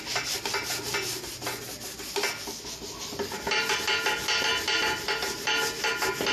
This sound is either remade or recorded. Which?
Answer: recorded